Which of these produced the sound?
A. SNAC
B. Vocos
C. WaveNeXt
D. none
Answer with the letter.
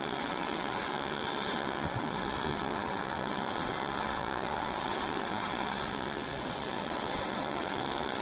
C